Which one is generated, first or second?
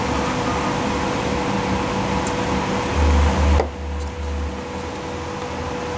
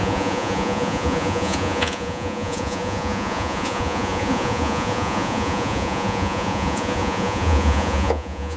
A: second